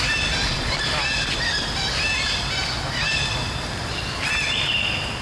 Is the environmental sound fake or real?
real